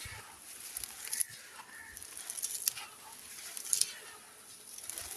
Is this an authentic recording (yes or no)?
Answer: yes